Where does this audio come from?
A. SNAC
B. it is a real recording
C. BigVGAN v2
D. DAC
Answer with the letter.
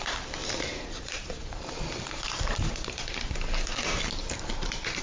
C